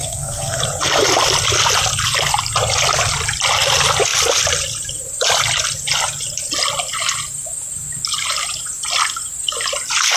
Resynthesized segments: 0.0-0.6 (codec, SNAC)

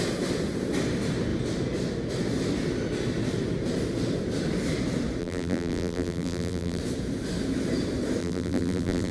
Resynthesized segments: 5.2-6.8 (vocoder, BigVGAN v2); 8.2-9.1

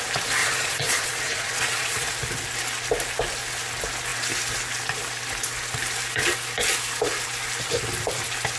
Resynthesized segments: 0.4-2.1 (vocoder, Vocos)

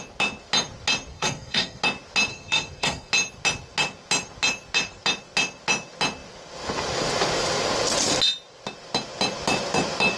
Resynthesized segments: 1.1-1.8 (codec, SNAC); 2.3-3.1

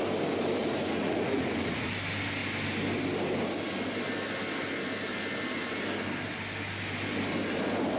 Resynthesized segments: 0.6-1.9 (vocoder, Vocos)